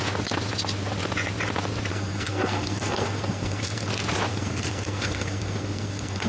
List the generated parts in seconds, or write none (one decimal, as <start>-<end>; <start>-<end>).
1.9-3.9; 4.3-6.3